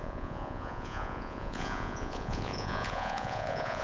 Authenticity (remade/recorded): remade